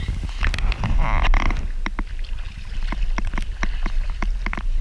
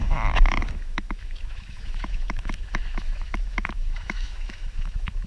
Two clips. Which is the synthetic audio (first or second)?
second